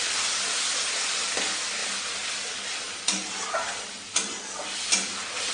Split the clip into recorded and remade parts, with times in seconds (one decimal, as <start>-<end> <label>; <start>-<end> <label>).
0.0-5.5 recorded